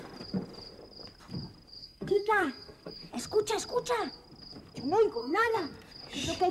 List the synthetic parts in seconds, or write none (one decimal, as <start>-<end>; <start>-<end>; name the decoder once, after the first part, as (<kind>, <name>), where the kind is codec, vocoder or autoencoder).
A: 1.8-3.1 (codec, SNAC); 5.2-5.7